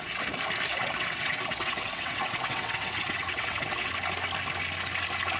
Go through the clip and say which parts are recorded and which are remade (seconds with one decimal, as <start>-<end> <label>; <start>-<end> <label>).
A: 0.0-0.7 recorded; 0.7-3.9 remade; 3.9-5.4 recorded